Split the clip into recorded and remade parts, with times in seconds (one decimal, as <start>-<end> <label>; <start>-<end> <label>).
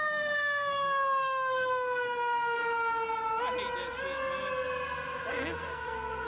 0.0-2.6 remade; 2.6-5.3 recorded; 5.3-6.3 remade